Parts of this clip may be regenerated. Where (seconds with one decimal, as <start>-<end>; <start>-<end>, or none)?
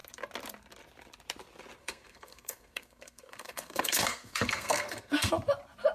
1.8-5.3